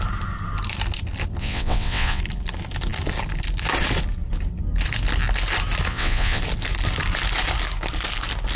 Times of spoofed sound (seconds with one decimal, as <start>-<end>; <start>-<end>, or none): 1.4-2.2; 5.9-6.4